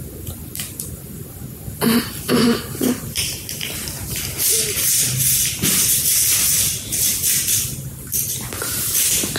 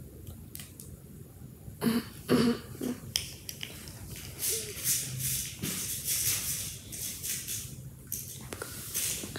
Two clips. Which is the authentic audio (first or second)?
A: second